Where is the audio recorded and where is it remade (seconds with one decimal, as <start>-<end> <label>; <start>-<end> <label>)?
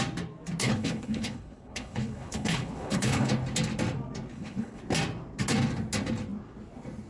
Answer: 0.0-0.6 recorded; 0.6-3.3 remade; 3.3-4.3 recorded; 4.3-4.8 remade; 4.8-7.1 recorded